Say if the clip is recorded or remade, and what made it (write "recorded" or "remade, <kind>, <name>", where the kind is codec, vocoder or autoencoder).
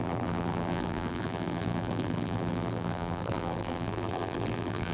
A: remade, vocoder, BigVGAN v2